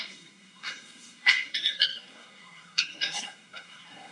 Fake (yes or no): yes